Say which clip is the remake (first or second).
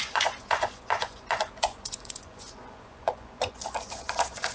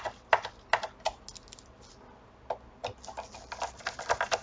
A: first